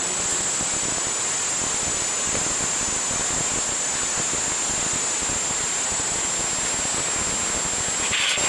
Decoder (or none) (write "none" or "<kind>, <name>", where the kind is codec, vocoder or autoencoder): none